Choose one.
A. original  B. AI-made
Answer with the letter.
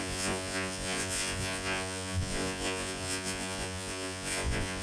B